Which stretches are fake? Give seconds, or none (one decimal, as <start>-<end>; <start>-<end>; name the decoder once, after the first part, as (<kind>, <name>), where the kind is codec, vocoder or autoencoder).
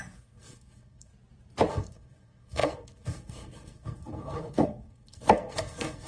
0.0-1.1 (codec, SNAC); 1.7-6.1